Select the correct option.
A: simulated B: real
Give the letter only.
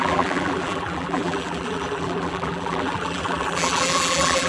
A